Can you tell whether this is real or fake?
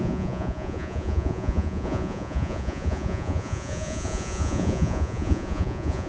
fake